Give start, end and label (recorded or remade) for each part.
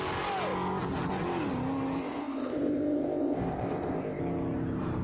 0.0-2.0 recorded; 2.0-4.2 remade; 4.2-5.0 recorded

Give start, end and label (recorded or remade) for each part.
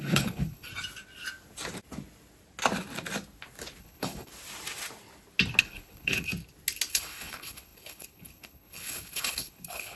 0.0-0.7 remade; 0.7-3.8 recorded; 3.8-4.3 remade; 4.3-5.6 recorded; 5.6-6.3 remade; 6.3-6.9 recorded; 6.9-10.0 remade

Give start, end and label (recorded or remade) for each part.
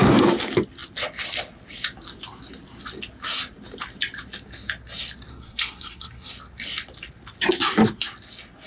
0.0-5.3 recorded; 5.3-6.3 remade; 6.3-8.7 recorded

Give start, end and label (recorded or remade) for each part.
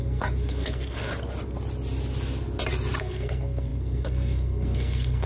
0.0-1.1 remade; 1.1-3.0 recorded; 3.0-5.3 remade